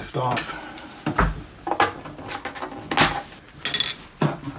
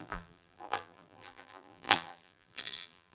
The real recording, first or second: first